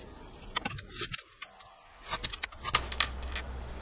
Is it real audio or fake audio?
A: real